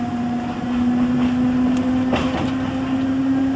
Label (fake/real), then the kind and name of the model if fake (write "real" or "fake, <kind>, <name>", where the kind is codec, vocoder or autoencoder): real